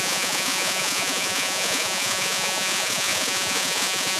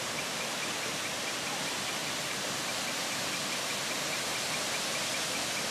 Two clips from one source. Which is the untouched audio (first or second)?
second